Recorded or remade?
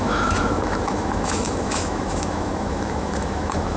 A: remade